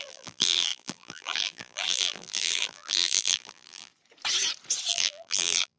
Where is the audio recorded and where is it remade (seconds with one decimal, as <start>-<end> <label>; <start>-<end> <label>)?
0.0-3.9 remade; 3.9-4.9 recorded; 4.9-5.8 remade